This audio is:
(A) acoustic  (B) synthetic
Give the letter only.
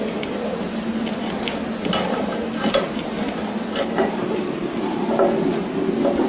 A